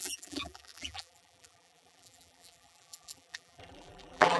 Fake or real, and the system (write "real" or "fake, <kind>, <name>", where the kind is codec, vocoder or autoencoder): fake, vocoder, BigVGAN v2